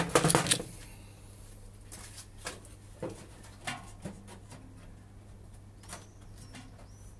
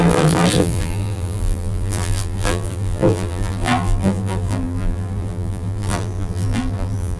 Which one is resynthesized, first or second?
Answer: second